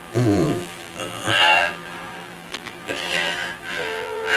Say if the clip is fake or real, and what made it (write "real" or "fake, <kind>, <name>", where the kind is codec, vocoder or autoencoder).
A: fake, vocoder, BigVGAN v2